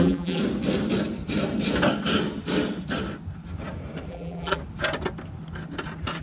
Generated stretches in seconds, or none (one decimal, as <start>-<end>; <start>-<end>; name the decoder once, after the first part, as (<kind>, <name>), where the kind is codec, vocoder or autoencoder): 0.0-0.4 (vocoder, BigVGAN v2); 4.1-4.6

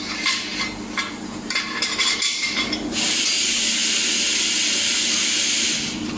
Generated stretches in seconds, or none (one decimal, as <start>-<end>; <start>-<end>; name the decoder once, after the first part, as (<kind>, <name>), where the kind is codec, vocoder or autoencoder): 0.0-0.5 (vocoder, BigVGAN v2); 1.1-3.8

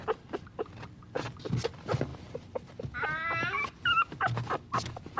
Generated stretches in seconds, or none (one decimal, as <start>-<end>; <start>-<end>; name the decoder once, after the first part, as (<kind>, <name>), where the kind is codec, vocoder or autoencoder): 0.0-1.0 (vocoder, BigVGAN v2)

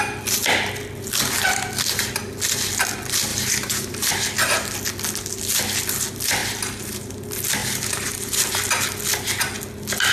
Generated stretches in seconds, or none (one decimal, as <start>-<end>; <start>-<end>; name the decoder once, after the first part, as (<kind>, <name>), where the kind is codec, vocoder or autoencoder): 3.3-4.1 (vocoder, BigVGAN v2); 6.4-7.1; 7.6-8.5

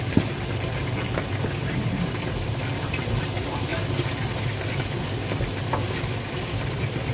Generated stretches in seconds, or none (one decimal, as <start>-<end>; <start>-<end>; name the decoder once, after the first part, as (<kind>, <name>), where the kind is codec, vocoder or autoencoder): 3.7-4.5 (vocoder, BigVGAN v2)

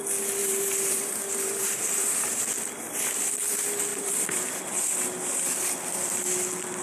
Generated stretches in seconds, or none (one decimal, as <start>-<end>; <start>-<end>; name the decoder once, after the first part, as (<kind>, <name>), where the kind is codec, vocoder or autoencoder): 0.4-2.4 (vocoder, BigVGAN v2); 3.9-4.6